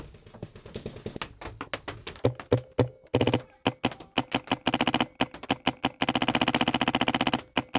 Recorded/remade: recorded